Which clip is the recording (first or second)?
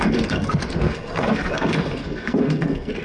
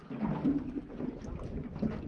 second